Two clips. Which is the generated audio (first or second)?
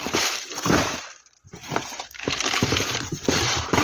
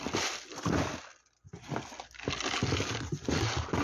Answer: first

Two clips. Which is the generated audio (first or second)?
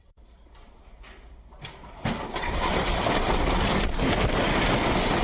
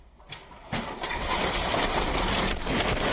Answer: first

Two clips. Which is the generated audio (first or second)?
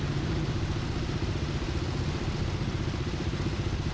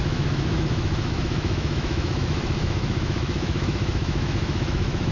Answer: second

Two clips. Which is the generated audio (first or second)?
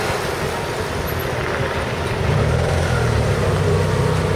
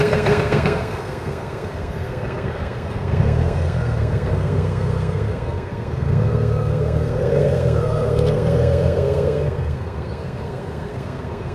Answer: second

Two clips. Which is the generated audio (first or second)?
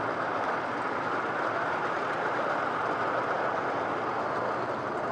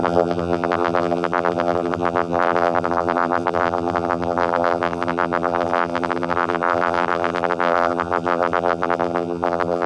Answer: second